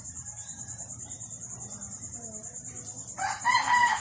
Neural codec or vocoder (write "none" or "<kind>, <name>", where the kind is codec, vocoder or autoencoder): none